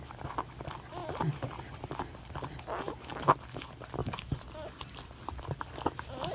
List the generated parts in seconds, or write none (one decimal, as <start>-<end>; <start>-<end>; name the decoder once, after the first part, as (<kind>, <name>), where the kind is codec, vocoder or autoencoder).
none